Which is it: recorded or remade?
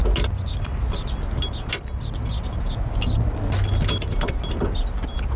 recorded